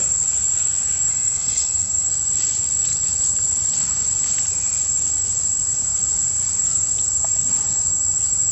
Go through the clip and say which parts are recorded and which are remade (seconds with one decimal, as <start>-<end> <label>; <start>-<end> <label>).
0.0-1.1 recorded; 1.1-2.1 remade; 2.1-8.5 recorded